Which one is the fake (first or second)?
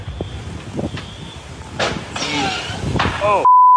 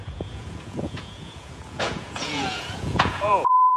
second